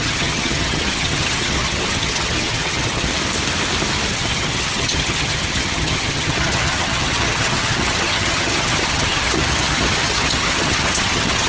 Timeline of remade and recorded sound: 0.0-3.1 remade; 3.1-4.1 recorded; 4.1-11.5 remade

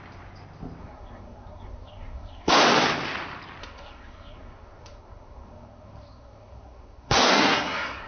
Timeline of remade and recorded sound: 0.0-0.8 recorded; 0.8-2.5 remade; 2.5-3.6 recorded; 3.6-8.1 remade